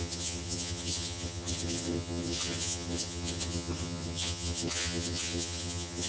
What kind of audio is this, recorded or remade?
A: remade